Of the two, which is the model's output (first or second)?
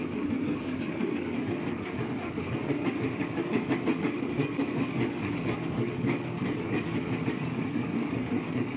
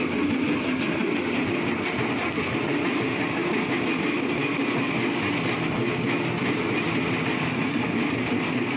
first